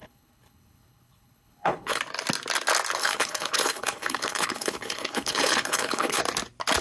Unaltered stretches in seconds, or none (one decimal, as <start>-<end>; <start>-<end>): 2.0-3.0; 6.2-6.8